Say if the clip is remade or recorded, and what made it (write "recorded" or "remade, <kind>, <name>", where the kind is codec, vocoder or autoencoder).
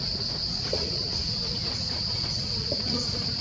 remade, vocoder, Vocos